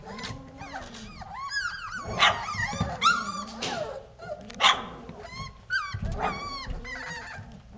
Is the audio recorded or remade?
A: recorded